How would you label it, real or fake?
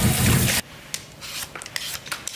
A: real